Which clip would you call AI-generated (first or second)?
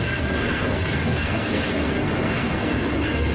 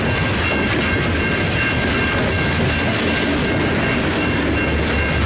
first